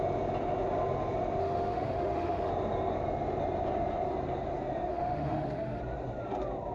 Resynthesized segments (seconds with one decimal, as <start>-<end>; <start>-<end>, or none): 1.4-2.5; 4.9-5.8